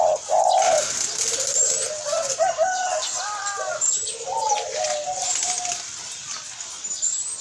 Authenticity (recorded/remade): recorded